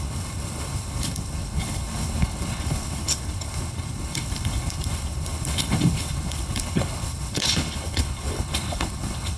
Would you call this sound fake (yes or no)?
yes